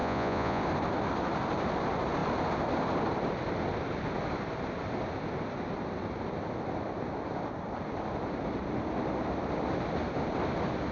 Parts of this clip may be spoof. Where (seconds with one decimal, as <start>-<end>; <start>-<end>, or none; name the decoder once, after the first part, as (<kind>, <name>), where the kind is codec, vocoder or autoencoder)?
0.0-0.6 (vocoder, Vocos)